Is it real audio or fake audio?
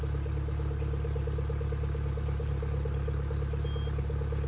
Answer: real